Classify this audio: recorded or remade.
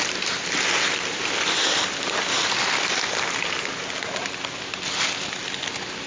recorded